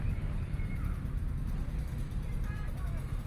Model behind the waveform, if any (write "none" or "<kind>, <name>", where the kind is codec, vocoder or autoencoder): none